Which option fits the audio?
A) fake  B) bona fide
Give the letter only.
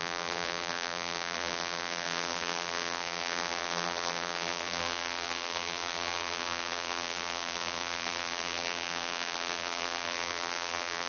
A